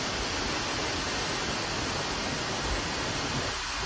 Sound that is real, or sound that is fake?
real